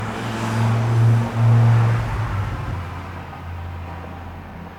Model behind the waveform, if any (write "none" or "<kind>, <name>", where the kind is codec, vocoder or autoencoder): none